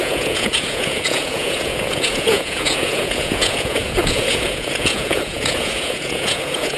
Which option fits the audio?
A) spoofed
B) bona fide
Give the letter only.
A